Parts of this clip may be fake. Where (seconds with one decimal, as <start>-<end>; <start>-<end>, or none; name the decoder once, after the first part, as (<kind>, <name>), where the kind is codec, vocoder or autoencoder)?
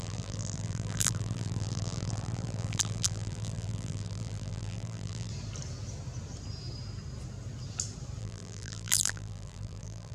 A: 0.0-5.3 (vocoder, BigVGAN v2); 8.2-10.1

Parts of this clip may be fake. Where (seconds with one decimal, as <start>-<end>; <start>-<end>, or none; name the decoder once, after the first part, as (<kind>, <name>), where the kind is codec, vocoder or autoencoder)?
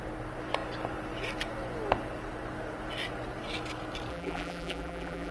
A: 4.1-5.3 (vocoder, BigVGAN v2)